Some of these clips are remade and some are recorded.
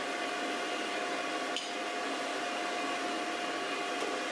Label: recorded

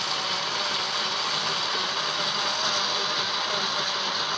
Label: recorded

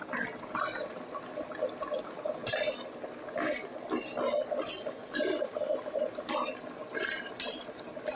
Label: recorded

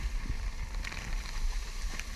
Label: recorded